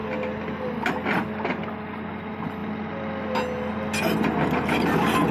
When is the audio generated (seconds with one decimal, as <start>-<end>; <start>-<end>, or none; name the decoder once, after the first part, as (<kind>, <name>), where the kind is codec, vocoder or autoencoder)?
none